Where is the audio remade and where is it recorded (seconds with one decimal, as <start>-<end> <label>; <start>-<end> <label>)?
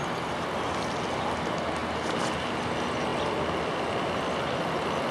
0.0-5.1 recorded